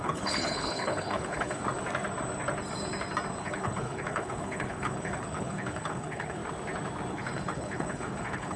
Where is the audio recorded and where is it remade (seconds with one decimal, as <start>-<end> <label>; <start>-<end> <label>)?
0.0-1.6 remade; 1.6-3.4 recorded; 3.4-6.4 remade; 6.4-7.1 recorded; 7.1-8.6 remade